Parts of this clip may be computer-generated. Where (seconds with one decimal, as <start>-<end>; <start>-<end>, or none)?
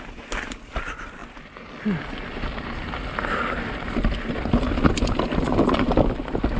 none